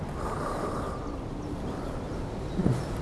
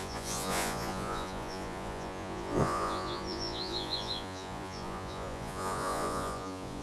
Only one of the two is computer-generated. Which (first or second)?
second